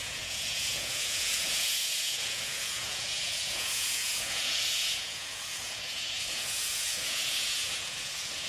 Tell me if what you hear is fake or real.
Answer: fake